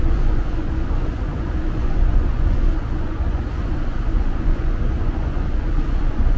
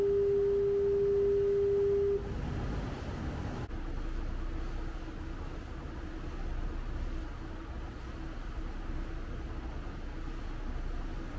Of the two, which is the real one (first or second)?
second